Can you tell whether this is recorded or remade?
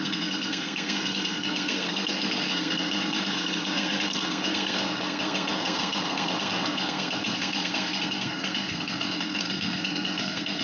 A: remade